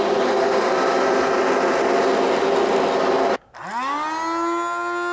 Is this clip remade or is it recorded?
recorded